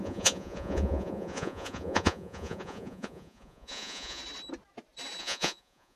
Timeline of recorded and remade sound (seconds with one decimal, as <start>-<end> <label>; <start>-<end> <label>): 0.0-4.2 remade; 4.2-5.2 recorded; 5.2-6.0 remade